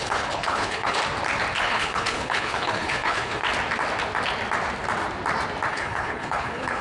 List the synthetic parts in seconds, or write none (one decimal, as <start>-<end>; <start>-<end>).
0.0-1.0; 1.6-3.4; 5.7-6.8